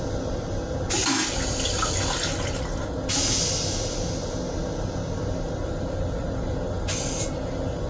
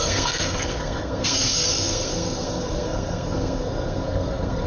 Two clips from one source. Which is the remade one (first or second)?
second